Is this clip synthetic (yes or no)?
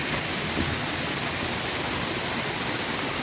no